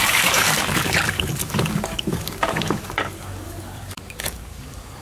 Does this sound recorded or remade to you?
remade